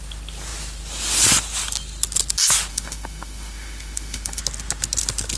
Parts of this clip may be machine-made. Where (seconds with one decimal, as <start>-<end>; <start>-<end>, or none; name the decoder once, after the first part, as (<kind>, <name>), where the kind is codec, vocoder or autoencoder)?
2.7-4.4 (autoencoder, DAC-VAE)